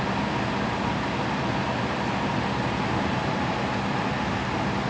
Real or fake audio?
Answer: real